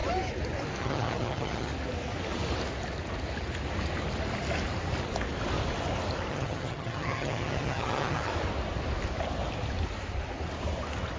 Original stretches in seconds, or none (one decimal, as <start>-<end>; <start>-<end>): 0.0-0.8; 1.7-6.3; 8.3-11.2